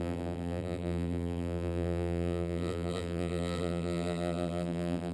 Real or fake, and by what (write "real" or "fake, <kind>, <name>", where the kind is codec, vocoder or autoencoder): fake, vocoder, BigVGAN v2